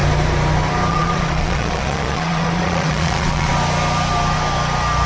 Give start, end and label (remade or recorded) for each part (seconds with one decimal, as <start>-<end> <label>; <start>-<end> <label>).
0.0-0.9 recorded; 0.9-3.5 remade; 3.5-5.1 recorded

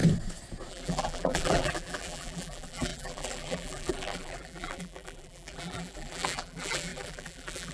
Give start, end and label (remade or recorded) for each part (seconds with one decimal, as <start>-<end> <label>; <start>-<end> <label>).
0.0-0.7 recorded; 0.7-7.7 remade

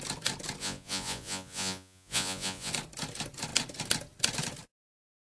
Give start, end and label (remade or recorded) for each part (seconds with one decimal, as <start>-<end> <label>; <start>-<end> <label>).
0.0-0.6 recorded; 0.6-2.7 remade; 2.7-5.3 recorded

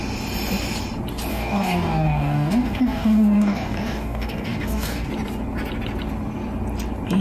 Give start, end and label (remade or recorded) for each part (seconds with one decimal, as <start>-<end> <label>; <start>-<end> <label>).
0.0-1.3 recorded; 1.3-5.1 remade; 5.1-7.2 recorded

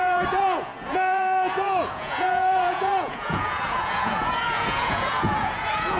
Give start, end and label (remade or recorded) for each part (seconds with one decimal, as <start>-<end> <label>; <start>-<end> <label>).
0.0-6.0 remade

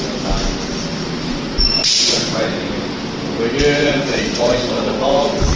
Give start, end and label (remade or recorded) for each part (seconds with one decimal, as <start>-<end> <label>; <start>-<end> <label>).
0.0-1.3 recorded; 1.3-2.5 remade; 2.5-3.8 recorded; 3.8-5.6 remade